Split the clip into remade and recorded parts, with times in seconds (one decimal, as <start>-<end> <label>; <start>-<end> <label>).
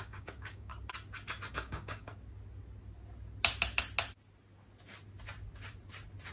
0.0-0.7 remade; 0.7-1.5 recorded; 1.5-2.1 remade; 2.1-6.3 recorded